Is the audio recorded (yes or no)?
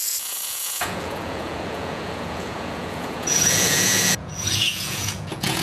no